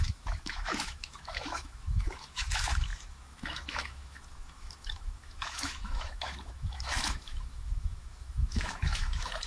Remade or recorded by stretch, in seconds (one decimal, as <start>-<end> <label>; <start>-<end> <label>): 0.0-9.5 remade